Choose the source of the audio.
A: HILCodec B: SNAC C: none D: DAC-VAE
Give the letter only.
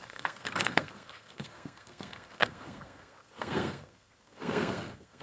B